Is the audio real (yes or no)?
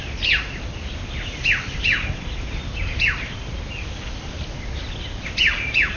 yes